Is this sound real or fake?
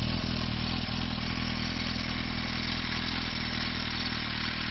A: real